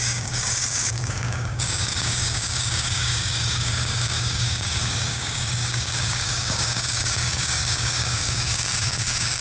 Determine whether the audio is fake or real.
fake